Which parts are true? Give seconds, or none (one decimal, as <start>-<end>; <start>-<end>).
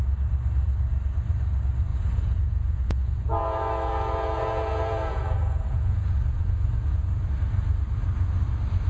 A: 0.0-1.9; 7.2-8.9